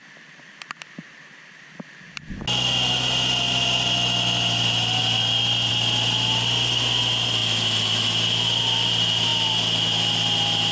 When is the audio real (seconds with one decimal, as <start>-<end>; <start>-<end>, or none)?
0.0-10.7